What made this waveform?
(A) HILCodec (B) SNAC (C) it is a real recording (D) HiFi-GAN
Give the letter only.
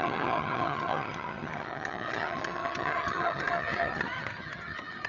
D